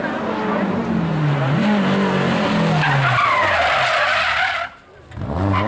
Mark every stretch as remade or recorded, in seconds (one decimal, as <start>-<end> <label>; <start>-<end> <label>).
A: 0.0-5.7 recorded